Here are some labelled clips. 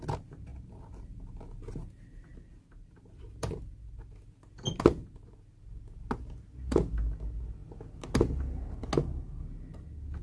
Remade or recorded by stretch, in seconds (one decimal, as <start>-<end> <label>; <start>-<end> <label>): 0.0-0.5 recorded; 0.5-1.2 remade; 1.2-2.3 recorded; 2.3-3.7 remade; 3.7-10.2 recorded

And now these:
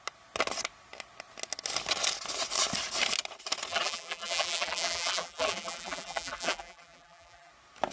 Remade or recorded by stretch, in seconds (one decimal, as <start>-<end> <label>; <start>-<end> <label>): 0.0-3.7 recorded; 3.7-7.5 remade; 7.5-7.9 recorded

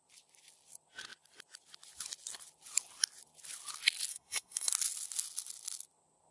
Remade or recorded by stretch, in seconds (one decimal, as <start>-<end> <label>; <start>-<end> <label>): 0.0-4.1 recorded; 4.1-4.7 remade; 4.7-6.3 recorded